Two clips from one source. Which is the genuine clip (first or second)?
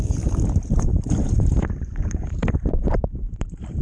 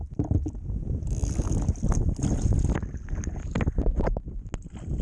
second